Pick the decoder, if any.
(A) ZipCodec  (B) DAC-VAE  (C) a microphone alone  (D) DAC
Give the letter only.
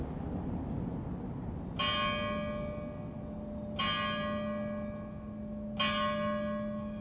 C